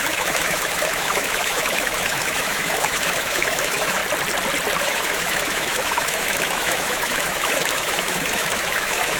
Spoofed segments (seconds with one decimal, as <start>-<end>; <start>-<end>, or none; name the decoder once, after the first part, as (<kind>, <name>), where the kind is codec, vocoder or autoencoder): 0.0-4.0 (autoencoder, DAC-VAE); 4.8-9.2